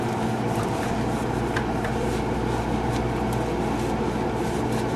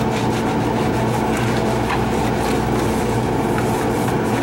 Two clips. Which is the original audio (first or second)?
second